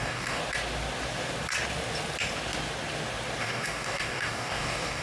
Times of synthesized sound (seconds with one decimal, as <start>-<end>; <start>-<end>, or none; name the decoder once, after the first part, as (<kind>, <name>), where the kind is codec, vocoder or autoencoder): 0.0-0.4 (codec, DAC); 3.4-5.0